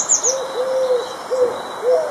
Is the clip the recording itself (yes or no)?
yes